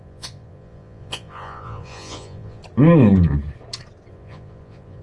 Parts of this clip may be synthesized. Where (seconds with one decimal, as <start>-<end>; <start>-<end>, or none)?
0.0-2.6; 4.1-5.0